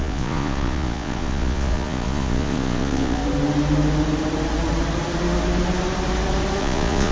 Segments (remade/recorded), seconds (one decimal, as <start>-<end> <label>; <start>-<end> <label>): 0.0-3.2 remade; 3.2-6.6 recorded; 6.6-7.1 remade